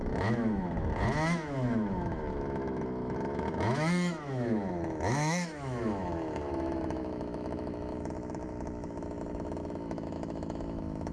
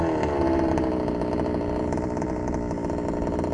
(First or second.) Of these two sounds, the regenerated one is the first